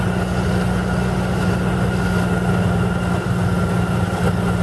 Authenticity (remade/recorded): recorded